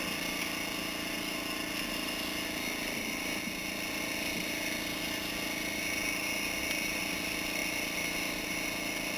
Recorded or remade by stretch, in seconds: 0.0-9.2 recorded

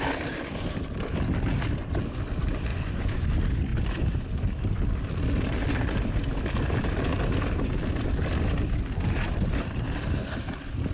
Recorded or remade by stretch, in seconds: 0.0-2.7 recorded; 2.7-3.3 remade; 3.3-10.9 recorded